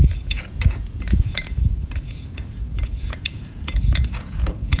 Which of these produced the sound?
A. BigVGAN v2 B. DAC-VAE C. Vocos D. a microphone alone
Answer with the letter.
C